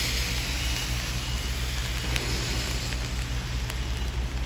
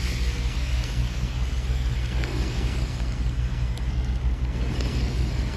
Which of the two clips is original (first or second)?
first